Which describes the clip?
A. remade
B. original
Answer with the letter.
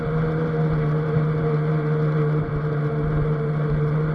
B